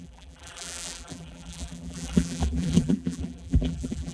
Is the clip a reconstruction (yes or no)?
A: yes